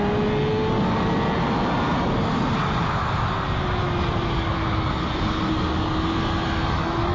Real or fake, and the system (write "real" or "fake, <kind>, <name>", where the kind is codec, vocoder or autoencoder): real